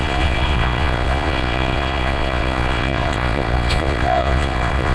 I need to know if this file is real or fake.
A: fake